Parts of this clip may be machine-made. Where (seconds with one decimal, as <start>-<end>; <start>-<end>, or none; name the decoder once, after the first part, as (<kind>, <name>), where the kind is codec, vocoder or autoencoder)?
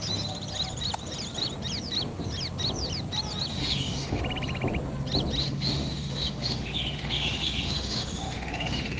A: 3.5-4.2 (autoencoder, DAC-VAE); 5.4-9.0